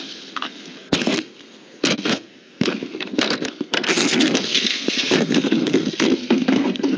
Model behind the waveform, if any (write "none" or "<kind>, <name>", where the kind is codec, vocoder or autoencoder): codec, SNAC